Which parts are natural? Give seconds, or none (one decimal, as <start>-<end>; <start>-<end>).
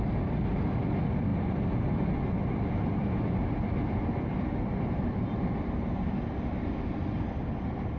0.0-8.0